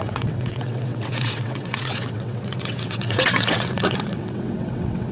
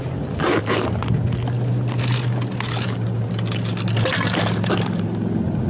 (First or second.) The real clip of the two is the second